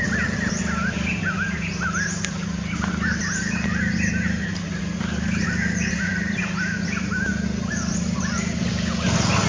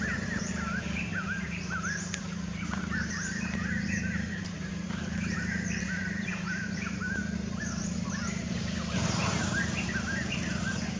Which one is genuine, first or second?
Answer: first